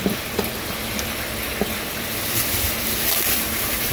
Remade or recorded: remade